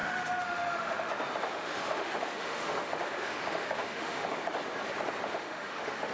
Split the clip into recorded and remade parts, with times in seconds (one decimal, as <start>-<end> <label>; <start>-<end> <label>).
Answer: 0.0-1.1 remade; 1.1-1.5 recorded; 1.5-4.3 remade; 4.3-5.3 recorded; 5.3-6.1 remade